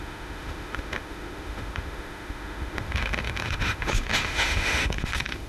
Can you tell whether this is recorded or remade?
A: remade